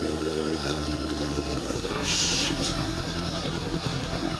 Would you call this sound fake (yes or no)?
yes